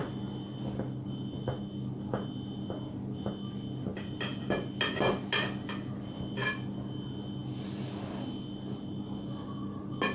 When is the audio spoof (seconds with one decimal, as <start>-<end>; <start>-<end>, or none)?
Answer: none